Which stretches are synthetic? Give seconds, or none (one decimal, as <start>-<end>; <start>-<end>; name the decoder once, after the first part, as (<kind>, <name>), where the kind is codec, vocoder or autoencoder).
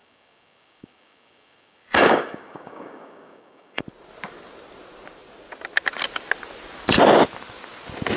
0.0-3.8 (codec, DAC)